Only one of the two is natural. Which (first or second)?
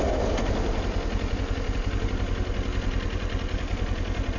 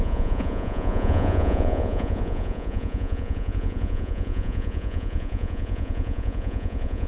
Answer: first